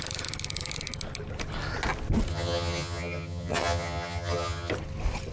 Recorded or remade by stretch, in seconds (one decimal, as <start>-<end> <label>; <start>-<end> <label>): 0.0-2.3 recorded; 2.3-4.7 remade; 4.7-5.3 recorded